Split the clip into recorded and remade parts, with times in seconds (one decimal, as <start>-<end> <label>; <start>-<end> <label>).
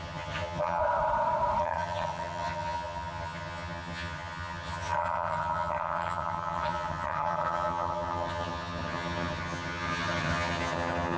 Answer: 0.0-0.8 remade; 0.8-1.6 recorded; 1.6-11.2 remade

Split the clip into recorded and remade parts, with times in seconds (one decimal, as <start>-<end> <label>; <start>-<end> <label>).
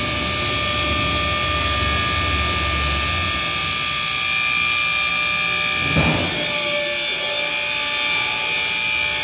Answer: 0.0-9.2 recorded